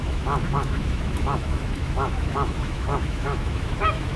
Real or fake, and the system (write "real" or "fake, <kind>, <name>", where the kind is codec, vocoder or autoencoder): fake, autoencoder, DAC-VAE